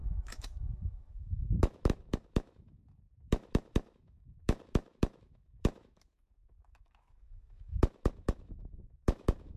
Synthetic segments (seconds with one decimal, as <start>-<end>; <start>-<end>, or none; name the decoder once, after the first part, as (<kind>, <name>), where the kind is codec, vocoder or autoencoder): 0.0-9.6 (autoencoder, DAC-VAE)